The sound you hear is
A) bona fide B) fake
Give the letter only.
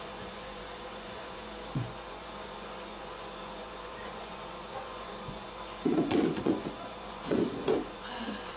B